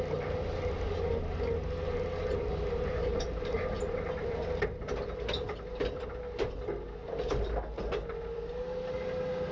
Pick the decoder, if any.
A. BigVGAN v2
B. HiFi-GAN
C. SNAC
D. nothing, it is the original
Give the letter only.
D